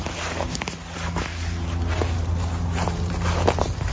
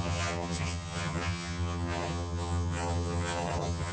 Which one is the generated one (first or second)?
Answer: second